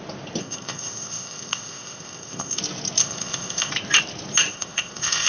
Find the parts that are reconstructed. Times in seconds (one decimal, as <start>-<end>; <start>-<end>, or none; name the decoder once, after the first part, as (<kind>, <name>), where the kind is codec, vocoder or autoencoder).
0.4-2.6 (codec, ZipCodec); 3.0-3.7; 4.5-5.3